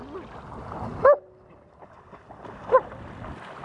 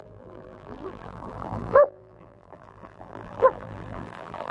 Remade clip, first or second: second